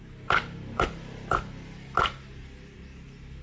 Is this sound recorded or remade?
recorded